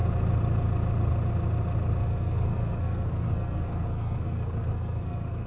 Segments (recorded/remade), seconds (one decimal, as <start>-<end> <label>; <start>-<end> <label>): 0.0-2.0 recorded; 2.0-5.5 remade